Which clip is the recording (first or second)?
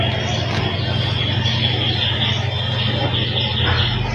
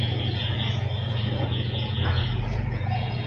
first